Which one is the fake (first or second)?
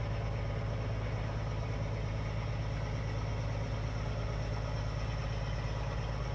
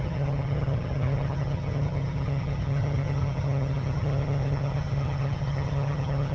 second